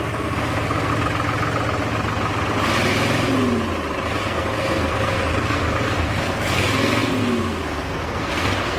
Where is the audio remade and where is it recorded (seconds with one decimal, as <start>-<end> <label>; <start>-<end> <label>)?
0.0-0.9 remade; 0.9-4.1 recorded; 4.1-8.8 remade